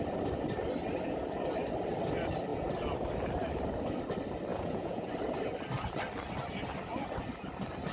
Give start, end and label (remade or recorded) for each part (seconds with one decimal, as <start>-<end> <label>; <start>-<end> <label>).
0.0-4.5 recorded; 4.5-5.1 remade; 5.1-7.9 recorded